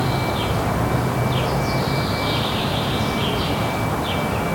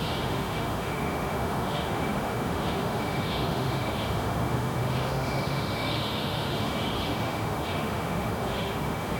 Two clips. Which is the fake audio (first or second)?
second